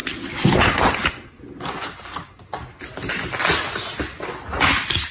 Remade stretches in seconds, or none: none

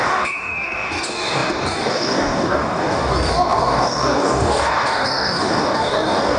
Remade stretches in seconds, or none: 0.0-6.4 (codec, DAC)